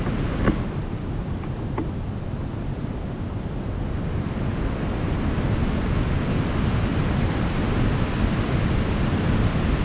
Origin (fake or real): real